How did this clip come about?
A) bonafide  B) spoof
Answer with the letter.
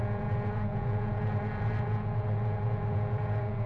B